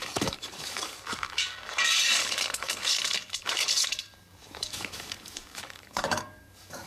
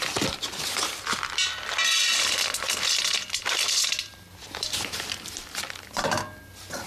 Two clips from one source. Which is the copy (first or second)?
first